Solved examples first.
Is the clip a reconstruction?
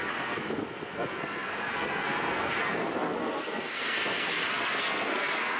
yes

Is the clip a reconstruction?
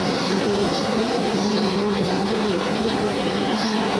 yes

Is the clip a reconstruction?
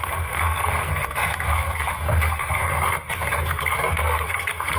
yes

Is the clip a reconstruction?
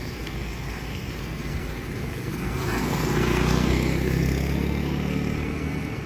yes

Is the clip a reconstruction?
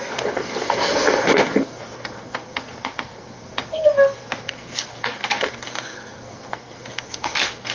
yes